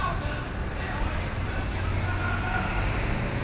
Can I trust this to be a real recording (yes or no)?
yes